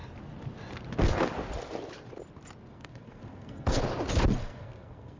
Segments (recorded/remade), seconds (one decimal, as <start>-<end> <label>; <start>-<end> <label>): 0.0-2.7 recorded; 2.7-3.8 remade; 3.8-4.4 recorded; 4.4-5.2 remade